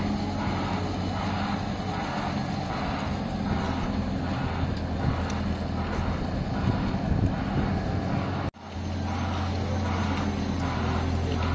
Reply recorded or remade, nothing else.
recorded